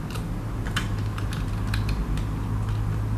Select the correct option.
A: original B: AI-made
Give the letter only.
A